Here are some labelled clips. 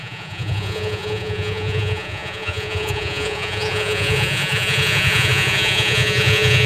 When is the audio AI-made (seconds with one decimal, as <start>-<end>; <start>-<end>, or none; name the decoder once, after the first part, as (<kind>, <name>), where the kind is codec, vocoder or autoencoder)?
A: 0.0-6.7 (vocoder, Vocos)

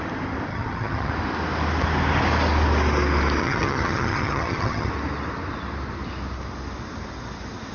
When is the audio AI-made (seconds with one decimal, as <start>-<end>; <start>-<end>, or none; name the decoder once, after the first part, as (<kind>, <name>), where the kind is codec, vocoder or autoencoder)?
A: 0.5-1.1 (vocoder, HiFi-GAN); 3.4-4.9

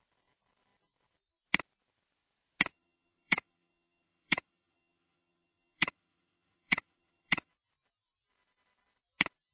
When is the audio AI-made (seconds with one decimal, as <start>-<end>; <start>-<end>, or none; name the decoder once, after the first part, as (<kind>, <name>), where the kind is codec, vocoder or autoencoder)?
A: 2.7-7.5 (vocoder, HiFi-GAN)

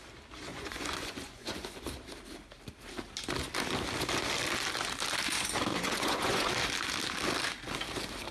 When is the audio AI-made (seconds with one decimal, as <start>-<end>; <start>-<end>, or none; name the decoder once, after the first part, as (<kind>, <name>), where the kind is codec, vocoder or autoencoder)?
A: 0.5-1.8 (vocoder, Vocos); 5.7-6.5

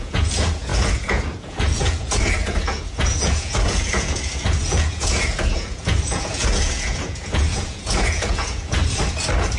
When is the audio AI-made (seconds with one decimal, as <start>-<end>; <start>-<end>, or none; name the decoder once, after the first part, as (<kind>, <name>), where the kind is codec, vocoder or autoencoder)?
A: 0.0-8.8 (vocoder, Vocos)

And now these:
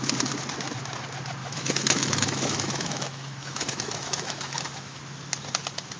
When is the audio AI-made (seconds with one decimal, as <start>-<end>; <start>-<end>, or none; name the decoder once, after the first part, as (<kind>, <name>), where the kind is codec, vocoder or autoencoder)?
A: 1.4-5.0 (autoencoder, DAC-VAE)

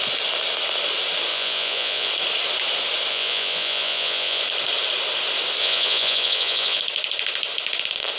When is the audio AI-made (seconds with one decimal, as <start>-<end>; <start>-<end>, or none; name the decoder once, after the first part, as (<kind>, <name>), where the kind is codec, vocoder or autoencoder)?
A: 1.3-2.1 (vocoder, Vocos); 3.1-4.4; 5.6-6.8

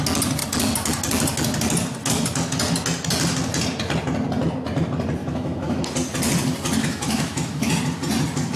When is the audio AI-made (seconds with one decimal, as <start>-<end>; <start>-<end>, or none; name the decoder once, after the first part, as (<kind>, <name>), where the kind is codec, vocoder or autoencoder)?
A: 5.2-5.8 (autoencoder, DAC-VAE); 6.8-7.7